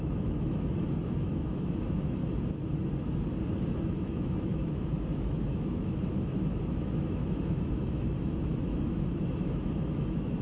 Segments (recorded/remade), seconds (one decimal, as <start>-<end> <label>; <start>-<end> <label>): 0.0-2.2 remade; 2.2-3.8 recorded; 3.8-10.4 remade